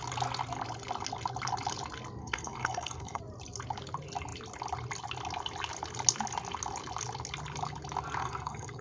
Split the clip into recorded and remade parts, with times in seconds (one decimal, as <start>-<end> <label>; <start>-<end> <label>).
0.0-2.2 recorded; 2.2-3.2 remade; 3.2-8.2 recorded; 8.2-8.8 remade